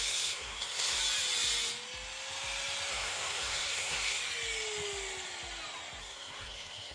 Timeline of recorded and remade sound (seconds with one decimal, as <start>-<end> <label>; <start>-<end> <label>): 0.0-1.0 remade; 1.0-2.9 recorded; 2.9-4.2 remade; 4.2-6.0 recorded; 6.0-6.9 remade